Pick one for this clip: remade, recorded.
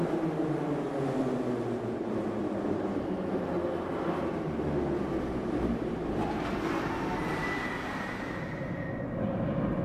recorded